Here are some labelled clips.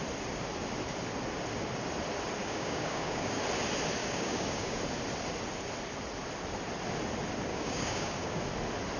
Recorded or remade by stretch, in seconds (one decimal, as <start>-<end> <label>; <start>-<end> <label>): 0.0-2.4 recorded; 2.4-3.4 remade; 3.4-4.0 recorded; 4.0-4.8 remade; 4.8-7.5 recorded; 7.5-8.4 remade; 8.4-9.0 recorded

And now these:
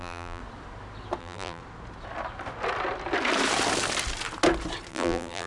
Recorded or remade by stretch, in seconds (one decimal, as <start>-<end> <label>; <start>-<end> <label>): 0.0-0.4 remade; 0.4-1.2 recorded; 1.2-1.6 remade; 1.6-4.9 recorded; 4.9-5.5 remade

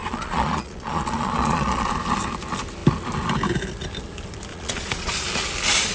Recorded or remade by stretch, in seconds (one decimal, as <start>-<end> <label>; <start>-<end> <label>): 0.0-1.9 remade; 1.9-4.5 recorded; 4.5-5.1 remade; 5.1-5.9 recorded

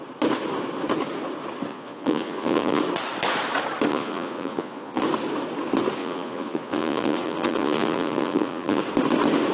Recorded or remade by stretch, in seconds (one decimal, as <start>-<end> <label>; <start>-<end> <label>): 0.0-1.7 recorded; 1.7-2.8 remade; 2.8-3.9 recorded; 3.9-5.0 remade; 5.0-6.0 recorded; 6.0-8.8 remade; 8.8-9.5 recorded

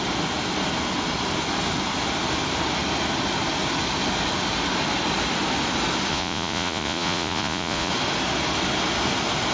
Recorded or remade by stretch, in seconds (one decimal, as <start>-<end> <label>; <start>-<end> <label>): 0.0-6.1 recorded; 6.1-7.9 remade; 7.9-9.5 recorded